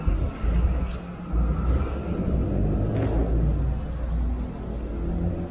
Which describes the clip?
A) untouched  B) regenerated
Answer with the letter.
A